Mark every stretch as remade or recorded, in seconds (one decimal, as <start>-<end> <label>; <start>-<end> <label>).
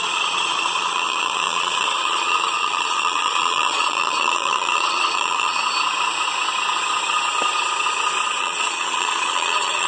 0.0-5.6 remade; 5.6-8.4 recorded; 8.4-9.9 remade